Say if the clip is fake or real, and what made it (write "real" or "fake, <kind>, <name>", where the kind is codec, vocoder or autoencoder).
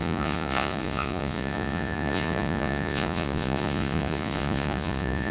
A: fake, vocoder, Vocos